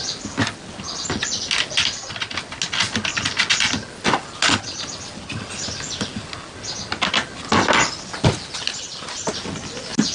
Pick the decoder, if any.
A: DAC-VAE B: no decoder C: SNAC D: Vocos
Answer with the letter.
B